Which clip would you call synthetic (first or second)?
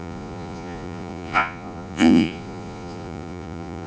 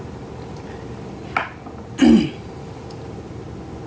first